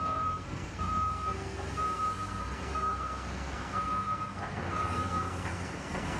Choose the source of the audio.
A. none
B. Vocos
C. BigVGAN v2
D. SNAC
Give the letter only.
D